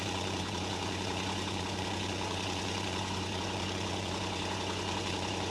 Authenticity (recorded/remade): remade